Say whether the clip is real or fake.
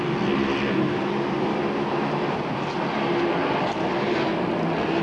real